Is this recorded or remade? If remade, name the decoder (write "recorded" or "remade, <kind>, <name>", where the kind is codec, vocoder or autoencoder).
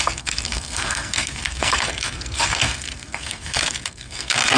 remade, codec, SNAC